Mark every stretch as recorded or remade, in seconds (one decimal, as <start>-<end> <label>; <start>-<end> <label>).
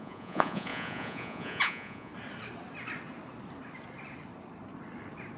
0.0-2.1 remade; 2.1-5.4 recorded